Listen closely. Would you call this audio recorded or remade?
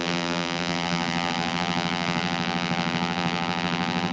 remade